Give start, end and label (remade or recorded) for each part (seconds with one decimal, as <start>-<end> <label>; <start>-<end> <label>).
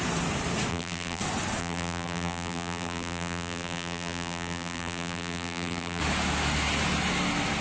0.0-0.7 recorded; 0.7-1.2 remade; 1.2-1.6 recorded; 1.6-6.0 remade; 6.0-7.6 recorded